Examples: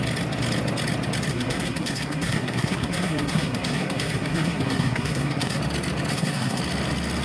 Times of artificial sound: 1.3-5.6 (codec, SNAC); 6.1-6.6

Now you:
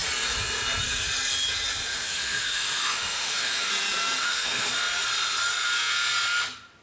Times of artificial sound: 1.9-3.7 (autoencoder, DAC-VAE); 4.2-4.7

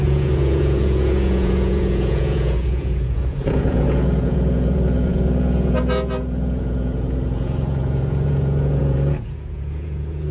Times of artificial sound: 0.0-10.3 (vocoder, Vocos)

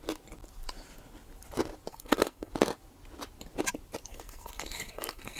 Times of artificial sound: 1.9-2.5 (codec, SNAC); 4.1-5.4

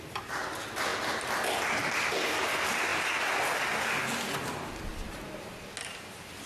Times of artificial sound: 4.9-5.6 (vocoder, BigVGAN v2)

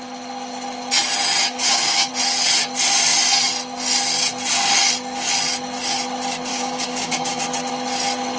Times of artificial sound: 1.4-2.1 (codec, DAC); 6.5-7.4